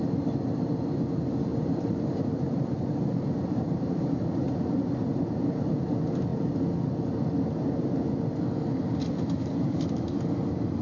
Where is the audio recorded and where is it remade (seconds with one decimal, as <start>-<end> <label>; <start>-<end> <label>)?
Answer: 0.0-1.5 recorded; 1.5-5.2 remade; 5.2-10.8 recorded